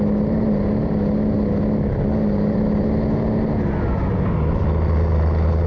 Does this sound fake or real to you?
real